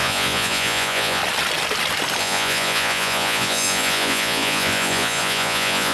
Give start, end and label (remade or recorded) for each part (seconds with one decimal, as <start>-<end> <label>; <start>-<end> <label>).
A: 0.0-1.2 remade; 1.2-2.2 recorded; 2.2-5.9 remade